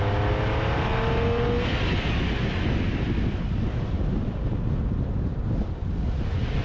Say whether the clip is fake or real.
real